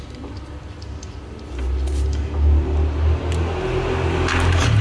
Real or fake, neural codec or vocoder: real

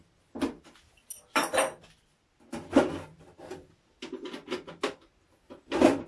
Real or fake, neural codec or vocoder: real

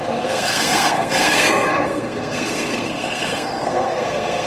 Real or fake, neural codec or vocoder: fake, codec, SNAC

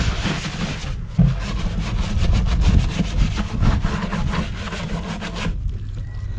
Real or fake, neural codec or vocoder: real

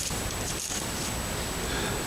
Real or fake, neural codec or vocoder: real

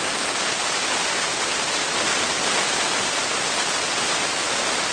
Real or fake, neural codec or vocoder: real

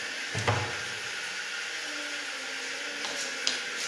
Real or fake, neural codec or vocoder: real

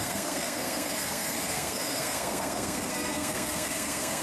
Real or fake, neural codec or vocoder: fake, codec, SNAC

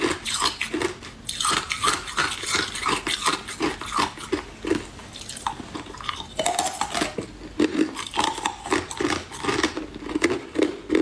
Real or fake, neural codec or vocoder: real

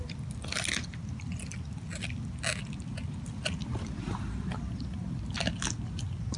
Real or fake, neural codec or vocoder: real